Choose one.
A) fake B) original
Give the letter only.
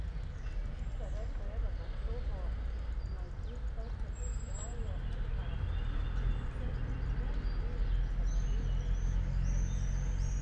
B